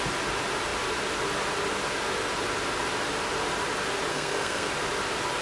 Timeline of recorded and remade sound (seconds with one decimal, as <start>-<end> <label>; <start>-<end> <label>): 0.0-4.1 recorded; 4.1-4.7 remade; 4.7-5.4 recorded